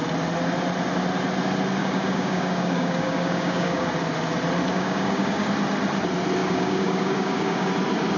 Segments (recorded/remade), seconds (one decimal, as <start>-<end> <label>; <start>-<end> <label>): 0.0-1.8 recorded; 1.8-3.9 remade; 3.9-4.7 recorded; 4.7-5.5 remade; 5.5-6.4 recorded; 6.4-7.7 remade; 7.7-8.2 recorded